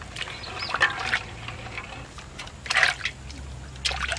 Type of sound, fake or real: real